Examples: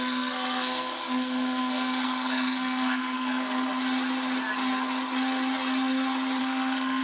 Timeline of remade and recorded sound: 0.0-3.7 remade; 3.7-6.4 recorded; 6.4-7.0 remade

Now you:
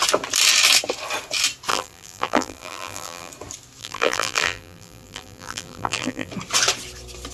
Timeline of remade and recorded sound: 0.0-1.7 recorded; 1.7-3.3 remade; 3.3-3.8 recorded; 3.8-6.3 remade; 6.3-7.3 recorded

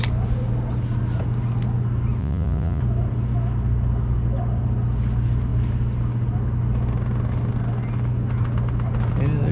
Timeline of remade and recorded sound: 0.0-2.2 recorded; 2.2-2.8 remade; 2.8-9.5 recorded

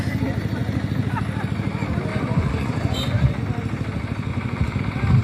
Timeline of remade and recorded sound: 0.0-2.1 recorded; 2.1-3.4 remade; 3.4-4.3 recorded; 4.3-4.8 remade; 4.8-5.2 recorded